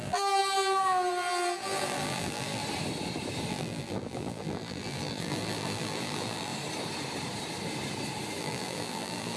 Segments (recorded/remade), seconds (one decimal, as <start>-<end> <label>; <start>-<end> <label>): 0.0-2.6 remade; 2.6-3.5 recorded; 3.5-6.5 remade; 6.5-8.4 recorded; 8.4-9.4 remade